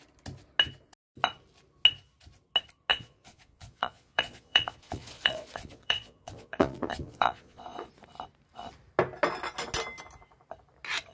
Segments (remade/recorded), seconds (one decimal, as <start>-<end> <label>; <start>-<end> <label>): 0.0-2.9 recorded; 2.9-7.9 remade; 7.9-11.1 recorded